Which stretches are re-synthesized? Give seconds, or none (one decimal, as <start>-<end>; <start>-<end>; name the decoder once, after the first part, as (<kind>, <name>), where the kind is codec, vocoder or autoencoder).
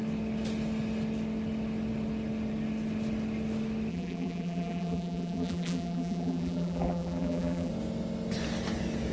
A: 3.9-7.7 (vocoder, BigVGAN v2)